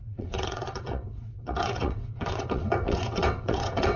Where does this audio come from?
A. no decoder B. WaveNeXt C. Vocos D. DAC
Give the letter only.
B